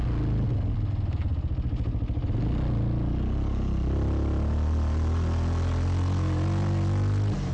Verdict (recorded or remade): recorded